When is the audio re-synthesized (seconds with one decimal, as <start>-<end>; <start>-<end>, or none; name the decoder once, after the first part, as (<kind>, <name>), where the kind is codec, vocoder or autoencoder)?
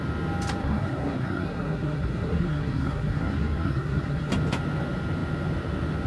0.6-4.3 (codec, SNAC)